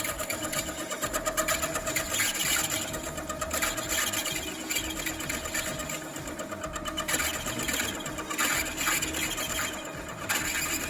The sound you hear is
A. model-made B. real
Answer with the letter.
B